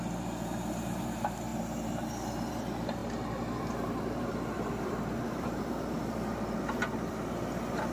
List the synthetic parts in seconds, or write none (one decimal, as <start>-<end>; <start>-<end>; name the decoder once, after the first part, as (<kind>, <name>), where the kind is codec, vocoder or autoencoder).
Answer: 0.0-1.5 (vocoder, BigVGAN v2); 2.5-7.9